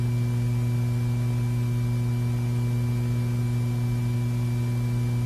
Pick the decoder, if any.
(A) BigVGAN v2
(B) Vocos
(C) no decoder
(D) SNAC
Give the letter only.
C